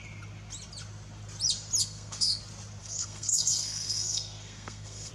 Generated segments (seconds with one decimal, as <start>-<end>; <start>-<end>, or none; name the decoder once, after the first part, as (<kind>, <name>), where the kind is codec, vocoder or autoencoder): 1.8-2.4 (codec, SNAC); 2.8-5.1